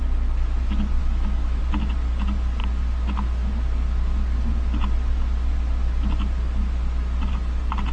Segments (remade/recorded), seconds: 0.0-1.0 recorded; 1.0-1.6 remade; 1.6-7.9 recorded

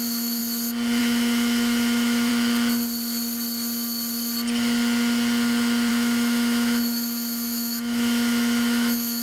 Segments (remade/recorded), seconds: 0.0-0.4 remade; 0.4-1.0 recorded; 1.0-2.3 remade; 2.3-5.9 recorded; 5.9-9.2 remade

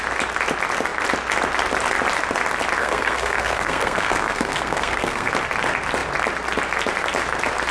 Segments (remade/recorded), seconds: 0.0-2.8 recorded; 2.8-5.3 remade; 5.3-7.7 recorded

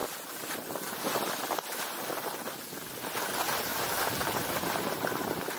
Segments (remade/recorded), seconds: 0.0-3.7 recorded; 3.7-4.8 remade; 4.8-5.6 recorded

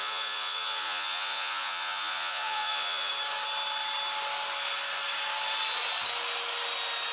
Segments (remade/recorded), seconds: 0.0-3.1 remade; 3.1-7.1 recorded

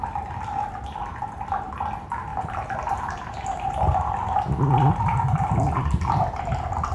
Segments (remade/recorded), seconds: 0.0-2.3 recorded; 2.3-6.4 remade; 6.4-6.9 recorded

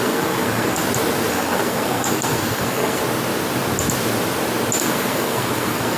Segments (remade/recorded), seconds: 0.0-0.8 remade; 0.8-1.3 recorded; 1.3-3.0 remade; 3.0-4.8 recorded; 4.8-6.0 remade

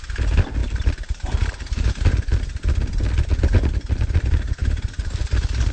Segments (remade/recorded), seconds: 0.0-0.6 recorded; 0.6-2.4 remade; 2.4-4.6 recorded; 4.6-5.3 remade; 5.3-5.7 recorded